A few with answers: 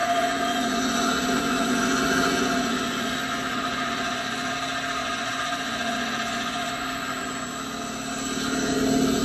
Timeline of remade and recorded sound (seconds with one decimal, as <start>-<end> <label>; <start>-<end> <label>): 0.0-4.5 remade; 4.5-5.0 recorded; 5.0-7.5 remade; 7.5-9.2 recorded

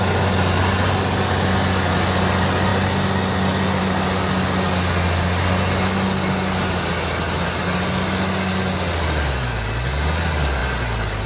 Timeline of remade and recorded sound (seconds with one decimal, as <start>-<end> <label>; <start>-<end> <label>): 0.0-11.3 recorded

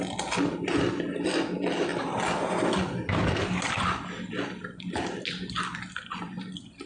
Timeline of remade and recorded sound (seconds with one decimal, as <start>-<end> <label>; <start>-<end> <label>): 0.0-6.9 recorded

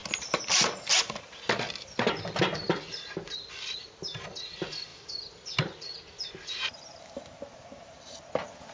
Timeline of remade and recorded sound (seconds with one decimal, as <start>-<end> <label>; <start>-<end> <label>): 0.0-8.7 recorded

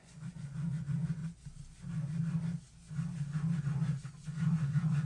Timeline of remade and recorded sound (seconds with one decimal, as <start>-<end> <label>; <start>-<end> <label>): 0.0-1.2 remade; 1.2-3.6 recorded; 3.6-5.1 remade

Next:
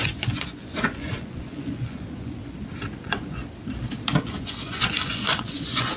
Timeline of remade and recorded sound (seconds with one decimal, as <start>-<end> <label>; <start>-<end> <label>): 0.0-2.4 remade; 2.4-3.0 recorded; 3.0-3.4 remade; 3.4-4.2 recorded; 4.2-6.0 remade

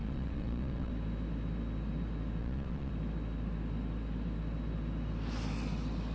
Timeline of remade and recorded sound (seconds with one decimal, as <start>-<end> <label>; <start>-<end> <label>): 0.0-0.9 remade; 0.9-2.4 recorded; 2.4-2.9 remade; 2.9-6.1 recorded